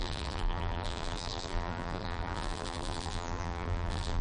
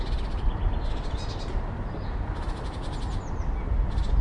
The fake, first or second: first